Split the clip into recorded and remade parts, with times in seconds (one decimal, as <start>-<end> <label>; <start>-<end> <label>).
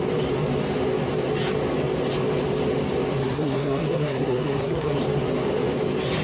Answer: 0.0-3.2 recorded; 3.2-5.0 remade; 5.0-6.2 recorded